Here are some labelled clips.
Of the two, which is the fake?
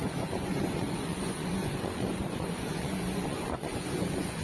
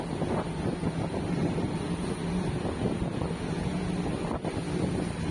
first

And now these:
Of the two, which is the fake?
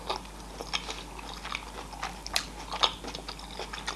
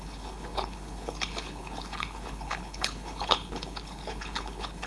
second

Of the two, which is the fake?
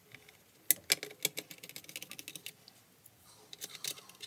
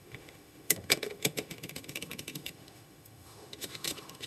second